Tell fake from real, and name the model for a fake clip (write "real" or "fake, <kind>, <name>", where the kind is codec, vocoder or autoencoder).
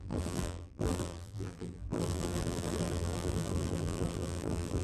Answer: fake, vocoder, BigVGAN v2